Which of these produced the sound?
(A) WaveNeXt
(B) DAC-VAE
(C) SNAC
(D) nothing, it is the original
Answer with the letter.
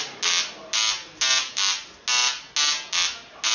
D